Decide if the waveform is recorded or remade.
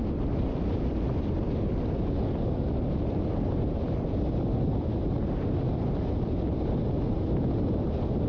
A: recorded